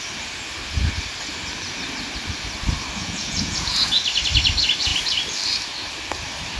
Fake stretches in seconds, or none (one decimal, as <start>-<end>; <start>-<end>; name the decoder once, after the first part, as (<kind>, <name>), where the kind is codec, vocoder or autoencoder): 3.0-3.9 (vocoder, Vocos)